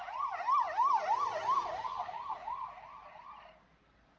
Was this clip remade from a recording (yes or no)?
no